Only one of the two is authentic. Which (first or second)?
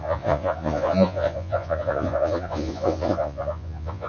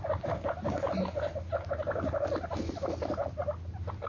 second